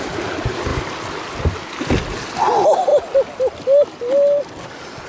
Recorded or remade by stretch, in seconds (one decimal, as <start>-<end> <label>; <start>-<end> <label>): 0.0-5.1 recorded